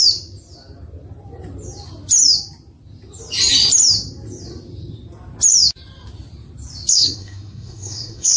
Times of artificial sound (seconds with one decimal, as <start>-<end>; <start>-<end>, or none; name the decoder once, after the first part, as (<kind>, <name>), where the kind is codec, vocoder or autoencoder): 6.9-8.4 (codec, SNAC)